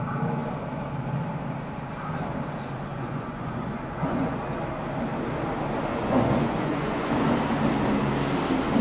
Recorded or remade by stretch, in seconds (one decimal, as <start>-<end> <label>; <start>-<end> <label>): 0.0-2.9 recorded; 2.9-4.4 remade; 4.4-5.9 recorded; 5.9-7.1 remade; 7.1-8.8 recorded